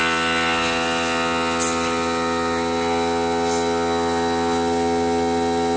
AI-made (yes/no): no